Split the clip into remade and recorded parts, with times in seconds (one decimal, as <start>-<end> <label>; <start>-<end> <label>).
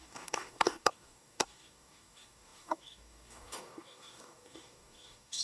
0.0-5.4 remade